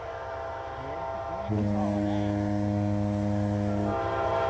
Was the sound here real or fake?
real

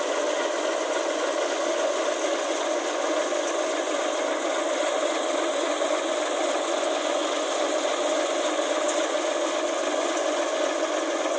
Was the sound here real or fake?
fake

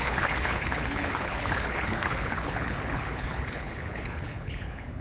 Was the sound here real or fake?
fake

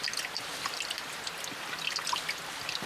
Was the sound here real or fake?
real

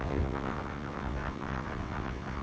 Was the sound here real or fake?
fake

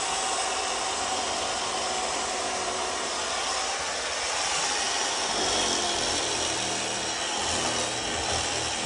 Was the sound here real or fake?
real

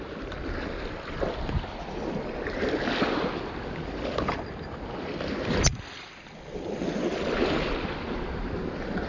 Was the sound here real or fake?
real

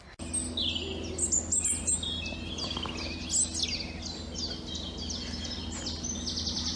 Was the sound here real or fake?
real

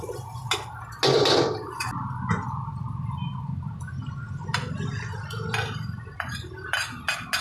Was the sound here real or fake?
real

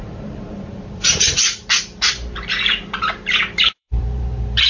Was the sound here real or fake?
fake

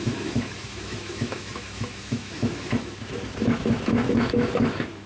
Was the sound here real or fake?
fake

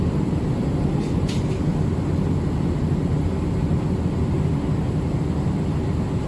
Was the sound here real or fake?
real